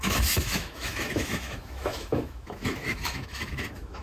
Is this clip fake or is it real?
fake